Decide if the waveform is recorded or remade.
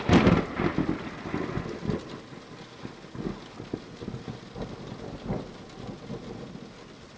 recorded